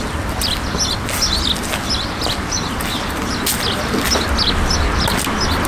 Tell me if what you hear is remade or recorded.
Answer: recorded